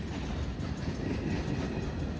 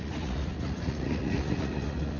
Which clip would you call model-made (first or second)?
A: second